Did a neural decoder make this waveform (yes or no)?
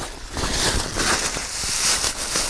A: no